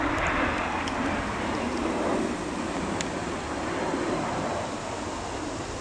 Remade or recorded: recorded